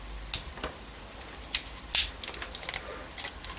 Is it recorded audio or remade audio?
recorded